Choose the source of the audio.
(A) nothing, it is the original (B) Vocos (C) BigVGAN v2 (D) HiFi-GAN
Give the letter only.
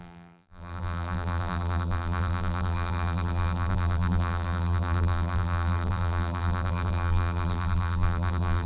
C